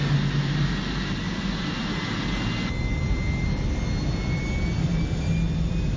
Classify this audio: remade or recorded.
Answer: recorded